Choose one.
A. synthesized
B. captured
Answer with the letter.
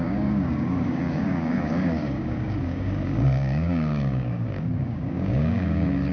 A